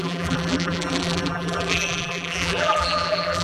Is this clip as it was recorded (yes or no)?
no